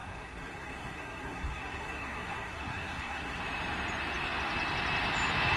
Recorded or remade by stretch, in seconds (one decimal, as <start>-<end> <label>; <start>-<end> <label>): 0.0-3.4 remade; 3.4-5.6 recorded

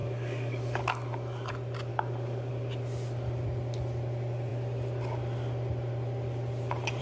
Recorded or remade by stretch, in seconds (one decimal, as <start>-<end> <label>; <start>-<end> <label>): 0.0-1.5 remade; 1.5-1.9 recorded; 1.9-2.5 remade; 2.5-7.0 recorded

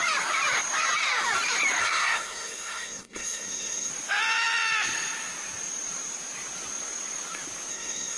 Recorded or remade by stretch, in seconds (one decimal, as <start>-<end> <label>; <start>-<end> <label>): 0.0-1.8 recorded; 1.8-3.9 remade; 3.9-7.7 recorded; 7.7-8.2 remade

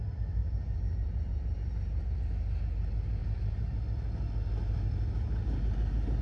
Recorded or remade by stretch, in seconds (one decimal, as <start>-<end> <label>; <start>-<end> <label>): 0.0-0.4 recorded; 0.4-2.2 remade; 2.2-3.2 recorded; 3.2-3.8 remade; 3.8-6.2 recorded

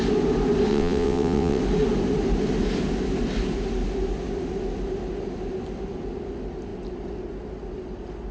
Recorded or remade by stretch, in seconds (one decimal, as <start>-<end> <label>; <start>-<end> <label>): 0.0-0.7 recorded; 0.7-1.6 remade; 1.6-8.3 recorded

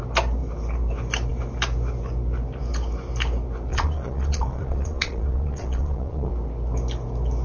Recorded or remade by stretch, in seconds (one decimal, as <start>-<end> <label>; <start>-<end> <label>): 0.0-3.7 recorded; 3.7-6.3 remade; 6.3-7.4 recorded

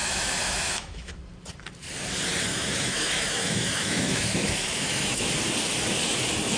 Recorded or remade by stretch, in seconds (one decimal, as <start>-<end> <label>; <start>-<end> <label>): 0.0-1.1 remade; 1.1-2.5 recorded; 2.5-5.3 remade; 5.3-6.6 recorded

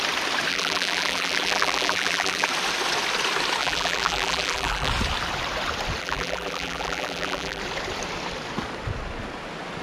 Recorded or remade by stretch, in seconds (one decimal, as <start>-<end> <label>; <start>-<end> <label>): 0.0-0.5 recorded; 0.5-2.5 remade; 2.5-3.6 recorded; 3.6-4.9 remade; 4.9-6.0 recorded; 6.0-7.6 remade; 7.6-9.8 recorded